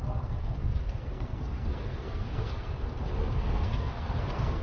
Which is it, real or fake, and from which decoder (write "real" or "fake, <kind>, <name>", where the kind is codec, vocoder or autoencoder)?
fake, codec, SNAC